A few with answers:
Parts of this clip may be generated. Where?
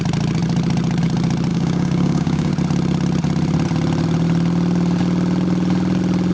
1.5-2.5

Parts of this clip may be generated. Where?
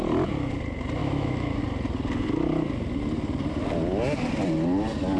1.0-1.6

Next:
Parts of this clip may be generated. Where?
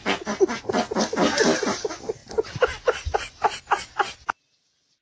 none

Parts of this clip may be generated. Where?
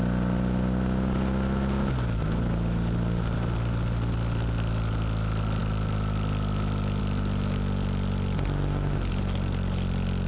none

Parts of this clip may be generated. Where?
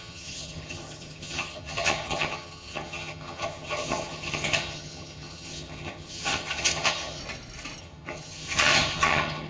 0.0-7.2; 7.8-9.5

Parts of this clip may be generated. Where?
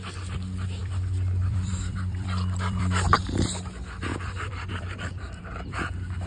0.8-2.8; 4.1-6.3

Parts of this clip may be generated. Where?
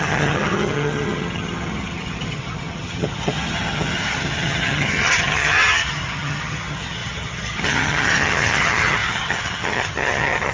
0.0-10.5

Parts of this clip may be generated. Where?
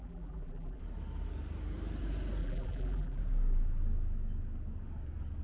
0.0-0.8; 2.4-3.2